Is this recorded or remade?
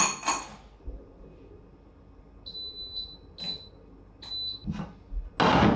recorded